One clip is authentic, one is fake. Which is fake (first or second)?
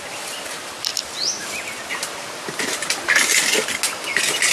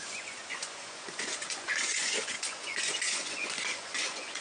second